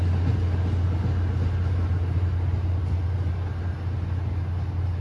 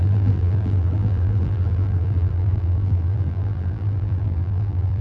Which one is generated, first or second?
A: second